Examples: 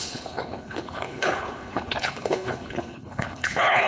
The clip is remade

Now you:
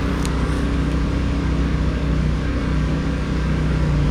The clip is remade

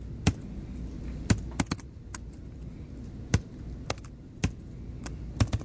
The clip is recorded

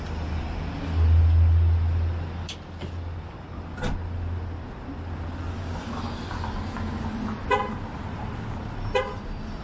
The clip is recorded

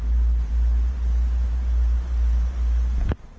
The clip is recorded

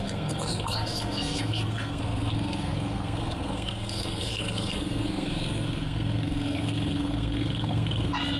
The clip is remade